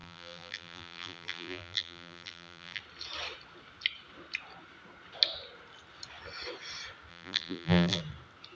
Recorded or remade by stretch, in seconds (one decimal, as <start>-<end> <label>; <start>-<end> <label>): 0.0-2.8 remade; 2.8-7.1 recorded; 7.1-8.0 remade; 8.0-8.6 recorded